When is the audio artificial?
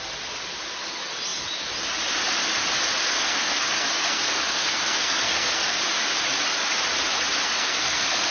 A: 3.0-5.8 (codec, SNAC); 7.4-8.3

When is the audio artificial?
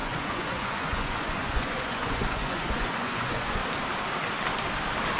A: 0.0-3.6 (vocoder, Vocos)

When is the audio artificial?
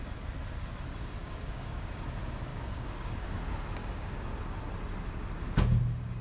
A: 1.2-1.9 (codec, DAC); 2.5-3.4; 3.8-4.3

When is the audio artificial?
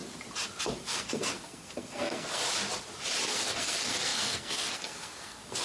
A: 0.6-2.4 (codec, SNAC); 3.3-5.6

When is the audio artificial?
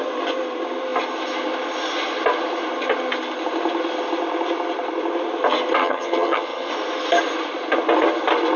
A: 5.8-6.7 (vocoder, HiFi-GAN)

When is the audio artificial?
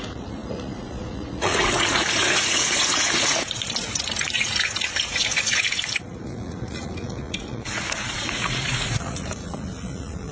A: 0.0-10.3 (vocoder, Vocos)